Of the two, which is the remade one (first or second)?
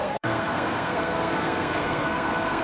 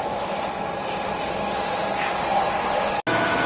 first